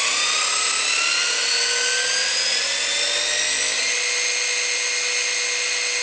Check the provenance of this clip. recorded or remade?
recorded